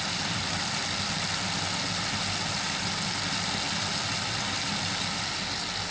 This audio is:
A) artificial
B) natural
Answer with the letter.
B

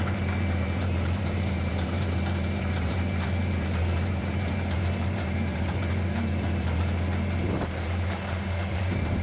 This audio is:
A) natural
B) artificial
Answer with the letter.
B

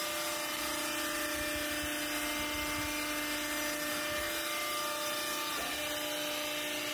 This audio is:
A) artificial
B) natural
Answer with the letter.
B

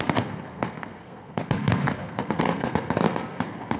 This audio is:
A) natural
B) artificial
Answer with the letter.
B